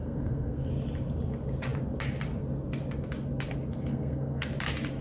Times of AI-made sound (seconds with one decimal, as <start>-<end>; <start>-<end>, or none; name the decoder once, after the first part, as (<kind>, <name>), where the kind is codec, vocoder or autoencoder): 0.0-0.7 (codec, SNAC); 3.9-4.5